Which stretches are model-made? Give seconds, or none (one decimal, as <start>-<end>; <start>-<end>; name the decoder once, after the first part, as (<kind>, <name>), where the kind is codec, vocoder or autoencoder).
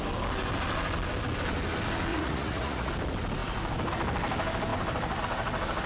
2.1-2.9 (vocoder, Vocos)